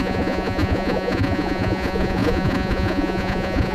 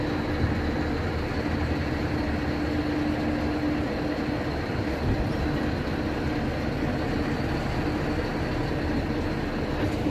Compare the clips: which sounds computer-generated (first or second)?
first